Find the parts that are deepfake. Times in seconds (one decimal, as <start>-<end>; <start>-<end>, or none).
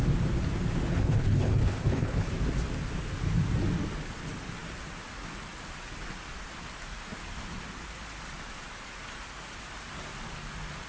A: 0.9-2.3